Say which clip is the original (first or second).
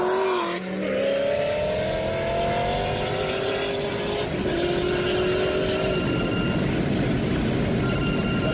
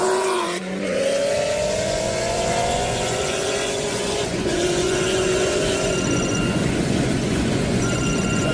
first